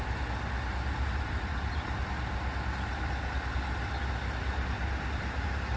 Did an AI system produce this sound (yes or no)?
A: no